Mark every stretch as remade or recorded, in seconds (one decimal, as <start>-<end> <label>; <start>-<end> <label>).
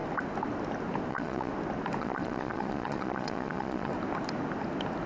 0.0-1.1 recorded; 1.1-1.5 remade; 1.5-2.0 recorded; 2.0-3.9 remade; 3.9-5.1 recorded